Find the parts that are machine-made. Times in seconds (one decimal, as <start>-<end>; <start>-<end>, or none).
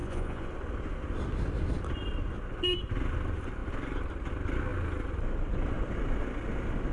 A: 0.0-0.5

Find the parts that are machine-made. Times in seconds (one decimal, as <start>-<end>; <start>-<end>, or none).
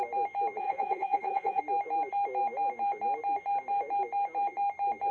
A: 0.6-1.6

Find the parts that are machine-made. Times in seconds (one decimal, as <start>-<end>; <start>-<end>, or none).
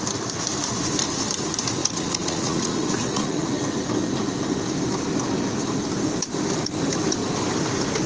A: 1.8-3.5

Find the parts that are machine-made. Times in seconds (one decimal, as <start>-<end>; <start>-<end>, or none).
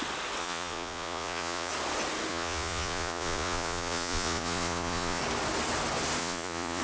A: 0.4-1.7; 2.3-5.2; 6.2-6.8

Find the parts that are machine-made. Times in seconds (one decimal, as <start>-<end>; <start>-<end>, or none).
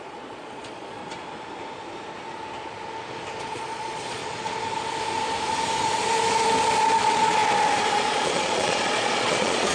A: 0.0-1.0; 3.4-4.2; 7.0-7.4; 8.0-9.7